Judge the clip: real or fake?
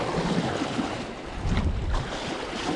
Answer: fake